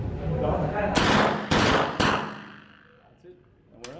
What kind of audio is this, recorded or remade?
recorded